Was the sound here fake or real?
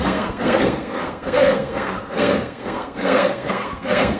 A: fake